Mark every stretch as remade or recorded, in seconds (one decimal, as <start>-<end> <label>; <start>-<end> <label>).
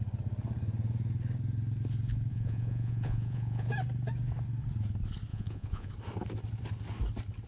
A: 0.0-2.3 recorded; 2.3-3.7 remade; 3.7-5.3 recorded; 5.3-5.9 remade; 5.9-7.5 recorded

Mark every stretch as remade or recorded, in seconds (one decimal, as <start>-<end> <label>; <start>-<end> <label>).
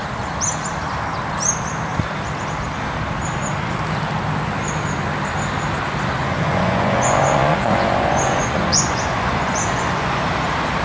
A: 0.0-6.2 recorded; 6.2-10.2 remade; 10.2-10.8 recorded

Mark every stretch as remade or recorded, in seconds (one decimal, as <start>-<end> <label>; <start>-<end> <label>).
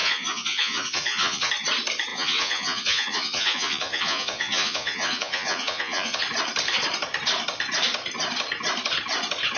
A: 0.0-1.5 remade; 1.5-2.1 recorded; 2.1-6.2 remade; 6.2-9.6 recorded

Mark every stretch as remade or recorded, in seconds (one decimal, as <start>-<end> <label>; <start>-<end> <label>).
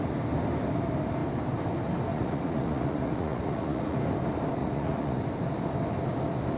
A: 0.0-2.1 recorded; 2.1-4.0 remade; 4.0-4.6 recorded; 4.6-5.2 remade; 5.2-6.6 recorded